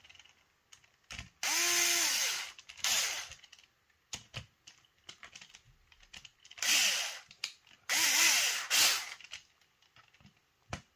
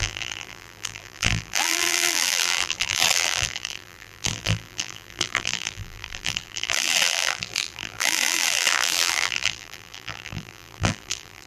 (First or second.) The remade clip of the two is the second